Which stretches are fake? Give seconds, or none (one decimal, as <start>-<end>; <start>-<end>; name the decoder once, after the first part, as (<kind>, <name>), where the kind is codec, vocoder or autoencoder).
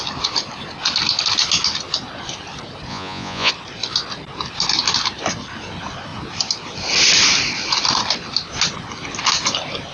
2.9-3.5 (vocoder, Vocos)